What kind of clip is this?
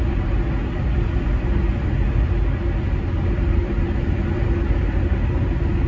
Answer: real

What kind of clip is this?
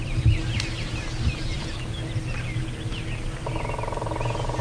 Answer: real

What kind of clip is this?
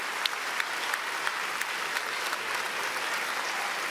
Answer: real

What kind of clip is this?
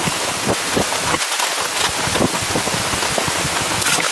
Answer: real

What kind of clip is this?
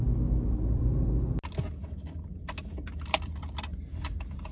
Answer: real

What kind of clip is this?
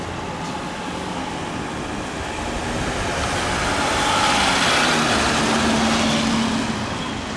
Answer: real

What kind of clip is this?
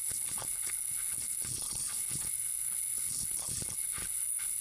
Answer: fake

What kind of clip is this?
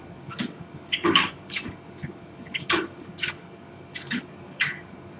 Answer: fake